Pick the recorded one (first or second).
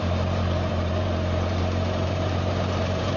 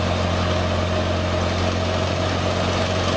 second